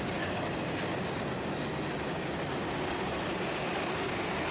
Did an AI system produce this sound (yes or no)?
no